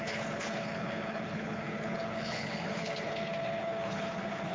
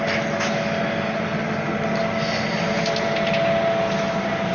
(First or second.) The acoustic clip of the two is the second